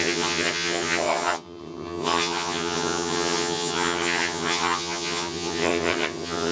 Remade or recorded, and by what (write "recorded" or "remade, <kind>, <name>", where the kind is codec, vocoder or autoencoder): remade, vocoder, HiFi-GAN